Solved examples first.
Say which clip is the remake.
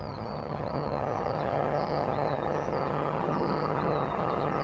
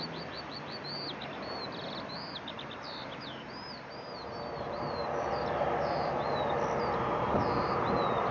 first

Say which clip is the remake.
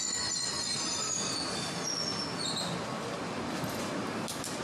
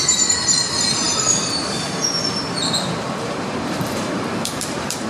second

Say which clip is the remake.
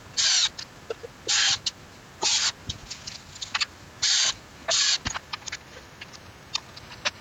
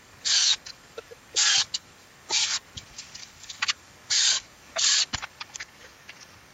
second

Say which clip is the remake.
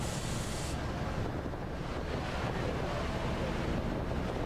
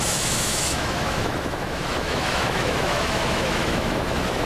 second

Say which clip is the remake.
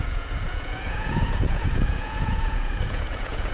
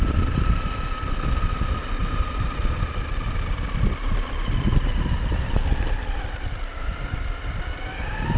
first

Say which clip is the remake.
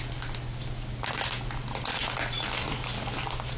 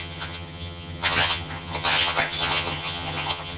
second